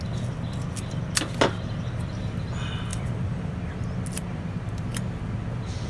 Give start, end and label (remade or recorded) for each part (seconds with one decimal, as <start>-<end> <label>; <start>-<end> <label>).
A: 0.0-2.9 recorded; 2.9-3.5 remade; 3.5-5.9 recorded